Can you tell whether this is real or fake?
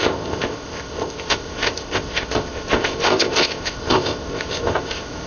fake